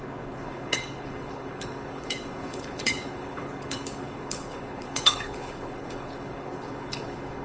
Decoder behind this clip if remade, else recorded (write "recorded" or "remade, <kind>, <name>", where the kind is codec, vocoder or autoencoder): remade, codec, HILCodec